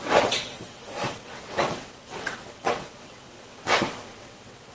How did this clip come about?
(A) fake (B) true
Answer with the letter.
A